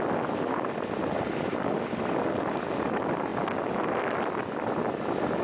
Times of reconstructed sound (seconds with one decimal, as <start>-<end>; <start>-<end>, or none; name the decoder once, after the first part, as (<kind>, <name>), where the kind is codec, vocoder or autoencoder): none